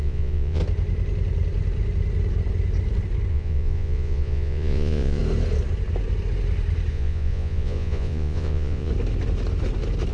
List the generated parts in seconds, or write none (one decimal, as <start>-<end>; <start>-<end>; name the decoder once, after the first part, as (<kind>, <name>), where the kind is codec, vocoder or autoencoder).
0.0-0.6 (vocoder, Vocos); 3.3-5.2; 6.9-8.9